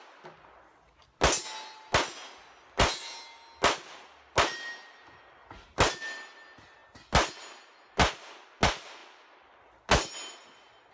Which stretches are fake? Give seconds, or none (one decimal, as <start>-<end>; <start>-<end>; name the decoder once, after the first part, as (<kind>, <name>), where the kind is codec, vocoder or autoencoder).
none